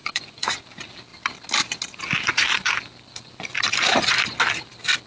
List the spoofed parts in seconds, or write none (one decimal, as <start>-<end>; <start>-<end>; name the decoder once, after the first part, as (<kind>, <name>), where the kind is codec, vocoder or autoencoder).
0.0-0.6 (vocoder, Vocos)